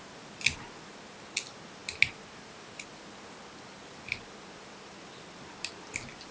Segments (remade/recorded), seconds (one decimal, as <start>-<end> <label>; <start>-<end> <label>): 0.0-6.3 recorded